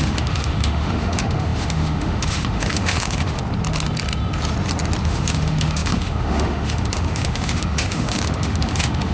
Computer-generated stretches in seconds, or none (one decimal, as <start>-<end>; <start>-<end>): 0.0-3.4; 5.0-9.1